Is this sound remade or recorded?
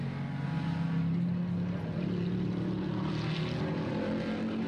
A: recorded